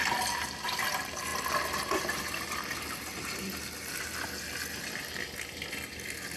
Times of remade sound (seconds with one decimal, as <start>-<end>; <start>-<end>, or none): none